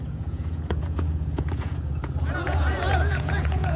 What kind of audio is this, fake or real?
fake